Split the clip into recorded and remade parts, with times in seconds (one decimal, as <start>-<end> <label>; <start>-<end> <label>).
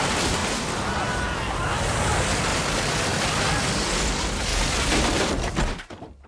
0.0-2.5 recorded; 2.5-4.0 remade; 4.0-4.5 recorded; 4.5-5.6 remade; 5.6-6.3 recorded